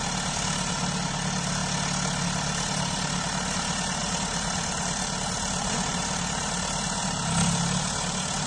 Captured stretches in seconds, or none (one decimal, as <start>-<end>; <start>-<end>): 1.6-2.2